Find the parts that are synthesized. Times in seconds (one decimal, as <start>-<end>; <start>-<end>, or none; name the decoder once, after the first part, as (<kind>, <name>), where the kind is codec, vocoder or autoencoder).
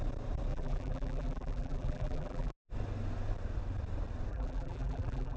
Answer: 0.5-2.5 (vocoder, BigVGAN v2); 4.3-5.4